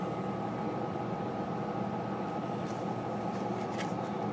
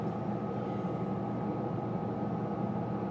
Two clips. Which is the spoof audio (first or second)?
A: first